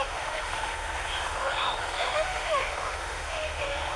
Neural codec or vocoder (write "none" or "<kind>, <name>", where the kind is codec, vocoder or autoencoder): autoencoder, DAC-VAE